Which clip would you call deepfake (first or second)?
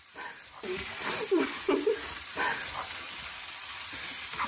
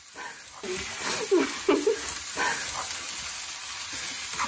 first